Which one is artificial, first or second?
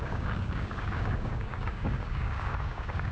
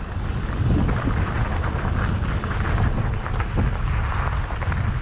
first